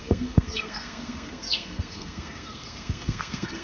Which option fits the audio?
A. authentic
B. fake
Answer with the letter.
B